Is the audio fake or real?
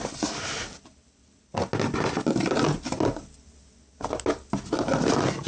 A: real